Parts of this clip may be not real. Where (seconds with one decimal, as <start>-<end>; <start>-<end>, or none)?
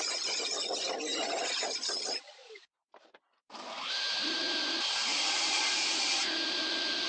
1.1-1.9; 2.4-6.6